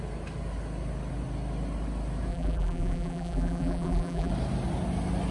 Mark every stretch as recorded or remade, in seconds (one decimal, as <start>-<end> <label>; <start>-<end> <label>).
0.0-2.3 recorded; 2.3-4.3 remade; 4.3-5.3 recorded